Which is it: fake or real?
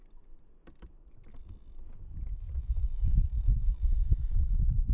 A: real